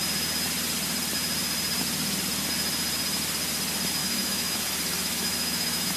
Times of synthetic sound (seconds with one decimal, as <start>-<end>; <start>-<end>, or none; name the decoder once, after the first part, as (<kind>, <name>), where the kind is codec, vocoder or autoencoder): 4.0-6.0 (autoencoder, DAC-VAE)